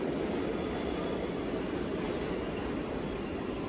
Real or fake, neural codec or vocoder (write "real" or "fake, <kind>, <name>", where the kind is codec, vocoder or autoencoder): real